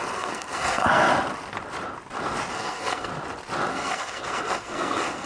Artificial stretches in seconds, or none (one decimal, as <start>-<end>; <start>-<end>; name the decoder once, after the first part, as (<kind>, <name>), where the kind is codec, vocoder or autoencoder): 0.0-1.1 (codec, SNAC); 2.5-3.1; 3.7-5.3

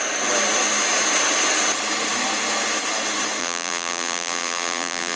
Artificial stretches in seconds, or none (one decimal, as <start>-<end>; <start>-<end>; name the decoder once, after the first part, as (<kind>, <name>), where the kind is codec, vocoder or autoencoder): 3.4-5.2 (vocoder, BigVGAN v2)

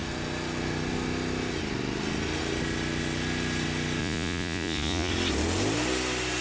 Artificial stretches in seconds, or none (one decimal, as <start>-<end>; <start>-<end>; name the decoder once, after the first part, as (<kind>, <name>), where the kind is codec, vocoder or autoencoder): 4.0-5.1 (vocoder, Vocos)

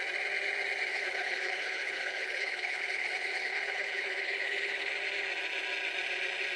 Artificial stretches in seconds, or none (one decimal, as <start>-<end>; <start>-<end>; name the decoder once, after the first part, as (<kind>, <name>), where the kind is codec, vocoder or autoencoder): 0.9-4.9 (codec, HILCodec)

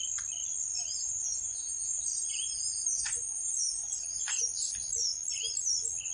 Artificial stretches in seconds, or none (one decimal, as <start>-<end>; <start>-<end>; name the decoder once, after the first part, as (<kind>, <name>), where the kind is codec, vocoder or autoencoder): 0.7-4.4 (vocoder, Vocos)

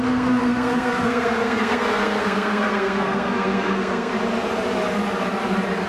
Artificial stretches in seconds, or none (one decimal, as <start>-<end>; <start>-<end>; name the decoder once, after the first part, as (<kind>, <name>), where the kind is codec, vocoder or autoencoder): 0.0-4.1 (codec, SNAC)

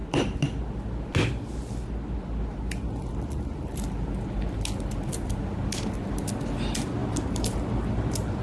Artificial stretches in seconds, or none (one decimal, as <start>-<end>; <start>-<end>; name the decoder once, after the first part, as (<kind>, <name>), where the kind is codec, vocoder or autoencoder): 7.0-8.4 (vocoder, BigVGAN v2)

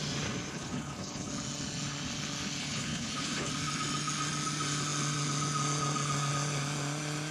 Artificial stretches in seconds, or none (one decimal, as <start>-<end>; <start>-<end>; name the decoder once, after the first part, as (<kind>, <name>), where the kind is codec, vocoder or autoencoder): 0.5-1.3 (codec, HILCodec); 2.6-3.5